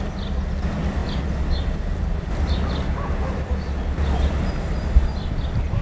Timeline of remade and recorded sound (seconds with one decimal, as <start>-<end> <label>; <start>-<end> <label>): 0.0-5.8 recorded